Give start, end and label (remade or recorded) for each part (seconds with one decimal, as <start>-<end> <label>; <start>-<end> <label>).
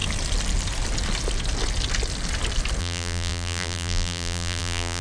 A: 0.0-2.8 recorded; 2.8-5.0 remade